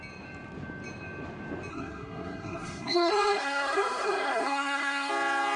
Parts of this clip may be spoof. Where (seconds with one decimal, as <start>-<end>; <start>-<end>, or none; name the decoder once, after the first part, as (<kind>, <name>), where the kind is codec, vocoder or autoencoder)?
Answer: 1.7-5.1 (codec, SNAC)